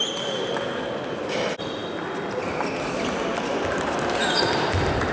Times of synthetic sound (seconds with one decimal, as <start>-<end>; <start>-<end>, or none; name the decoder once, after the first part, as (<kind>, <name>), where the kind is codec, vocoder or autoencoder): none